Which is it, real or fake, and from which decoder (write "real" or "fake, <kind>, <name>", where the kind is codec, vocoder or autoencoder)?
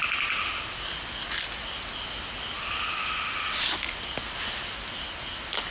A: real